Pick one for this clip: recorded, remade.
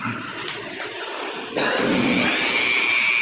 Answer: recorded